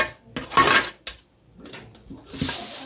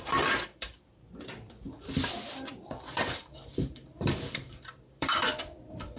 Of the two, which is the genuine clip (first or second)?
first